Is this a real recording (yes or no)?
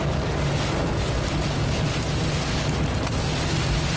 yes